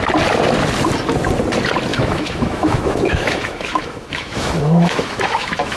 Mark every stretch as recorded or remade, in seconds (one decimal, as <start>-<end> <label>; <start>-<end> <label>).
0.0-1.9 recorded; 1.9-5.8 remade